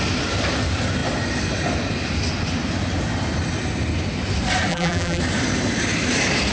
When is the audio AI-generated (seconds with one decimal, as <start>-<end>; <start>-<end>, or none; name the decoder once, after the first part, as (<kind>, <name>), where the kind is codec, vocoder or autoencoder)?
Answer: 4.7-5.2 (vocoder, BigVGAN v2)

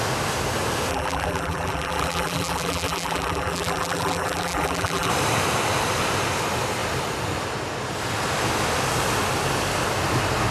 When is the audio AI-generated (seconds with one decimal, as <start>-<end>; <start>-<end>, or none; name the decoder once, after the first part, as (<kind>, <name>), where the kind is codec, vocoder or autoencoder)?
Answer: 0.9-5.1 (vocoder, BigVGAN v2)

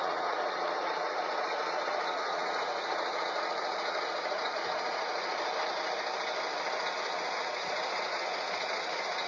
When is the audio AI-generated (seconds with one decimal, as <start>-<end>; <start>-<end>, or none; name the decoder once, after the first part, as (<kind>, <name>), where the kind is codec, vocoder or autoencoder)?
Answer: 0.0-5.5 (vocoder, Vocos); 7.2-9.3

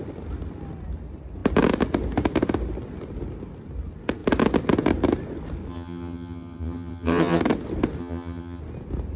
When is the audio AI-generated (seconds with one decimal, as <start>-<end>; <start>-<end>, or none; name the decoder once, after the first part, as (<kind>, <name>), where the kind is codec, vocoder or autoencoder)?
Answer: 5.7-7.4 (vocoder, HiFi-GAN); 8.0-8.6